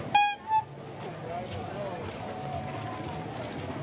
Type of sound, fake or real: real